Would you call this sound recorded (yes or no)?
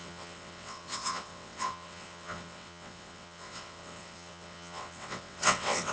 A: no